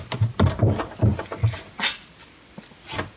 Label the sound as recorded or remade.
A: recorded